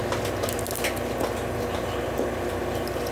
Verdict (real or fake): real